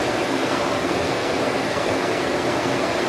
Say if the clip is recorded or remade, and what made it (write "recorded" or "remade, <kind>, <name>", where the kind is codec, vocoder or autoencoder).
remade, codec, SNAC